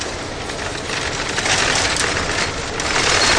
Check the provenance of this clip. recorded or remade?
recorded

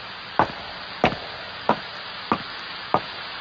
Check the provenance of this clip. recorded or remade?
recorded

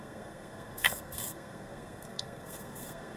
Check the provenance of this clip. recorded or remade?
remade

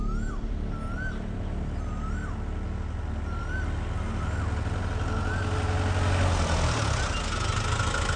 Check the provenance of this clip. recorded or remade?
recorded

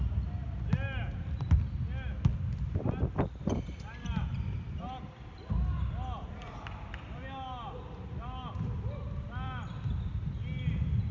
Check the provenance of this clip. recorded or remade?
recorded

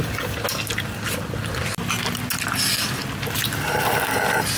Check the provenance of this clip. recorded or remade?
recorded